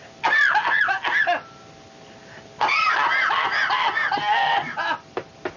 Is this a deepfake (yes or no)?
no